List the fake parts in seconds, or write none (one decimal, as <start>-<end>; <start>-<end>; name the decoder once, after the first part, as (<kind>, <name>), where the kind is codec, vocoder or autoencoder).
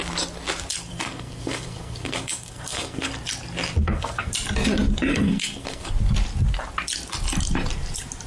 0.9-3.1 (codec, SNAC); 3.8-4.3; 5.1-5.9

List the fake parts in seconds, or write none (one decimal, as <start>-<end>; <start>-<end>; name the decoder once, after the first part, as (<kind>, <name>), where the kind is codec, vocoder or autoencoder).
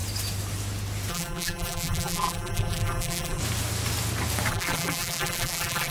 1.1-3.4 (vocoder, BigVGAN v2); 4.5-5.9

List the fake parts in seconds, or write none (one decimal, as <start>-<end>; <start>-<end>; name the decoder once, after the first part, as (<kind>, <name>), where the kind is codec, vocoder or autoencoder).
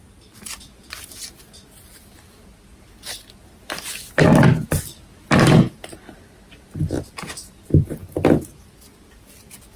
none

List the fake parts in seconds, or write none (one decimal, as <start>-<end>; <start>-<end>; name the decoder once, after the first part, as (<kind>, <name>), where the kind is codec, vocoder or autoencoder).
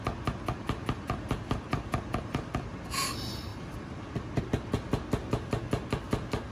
1.7-2.8 (vocoder, BigVGAN v2); 3.5-4.4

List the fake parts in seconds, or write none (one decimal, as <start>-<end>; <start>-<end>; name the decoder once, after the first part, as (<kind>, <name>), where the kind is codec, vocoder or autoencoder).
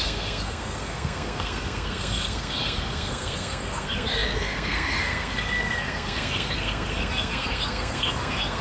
0.0-8.6 (codec, SNAC)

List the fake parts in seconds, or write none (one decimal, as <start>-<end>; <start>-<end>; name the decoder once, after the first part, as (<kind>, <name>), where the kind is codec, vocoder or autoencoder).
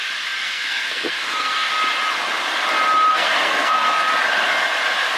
0.4-1.7 (codec, SNAC); 3.1-4.1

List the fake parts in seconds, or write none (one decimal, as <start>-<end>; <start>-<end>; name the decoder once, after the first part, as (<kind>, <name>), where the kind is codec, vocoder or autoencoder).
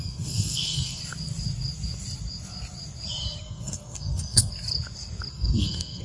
0.0-1.0 (codec, SNAC); 3.4-4.5; 5.3-6.0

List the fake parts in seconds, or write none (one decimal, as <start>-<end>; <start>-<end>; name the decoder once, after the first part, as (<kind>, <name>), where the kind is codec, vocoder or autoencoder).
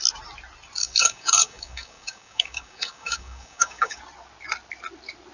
0.8-4.0 (codec, DAC)